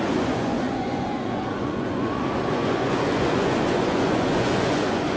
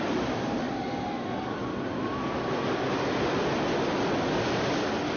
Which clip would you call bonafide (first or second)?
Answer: second